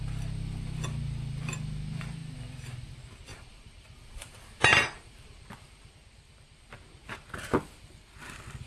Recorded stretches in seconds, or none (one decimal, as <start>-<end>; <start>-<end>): 0.0-3.3; 5.5-8.7